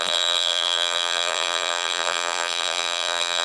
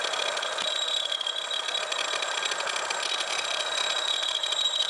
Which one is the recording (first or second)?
second